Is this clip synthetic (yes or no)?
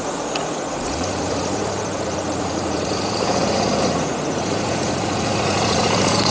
yes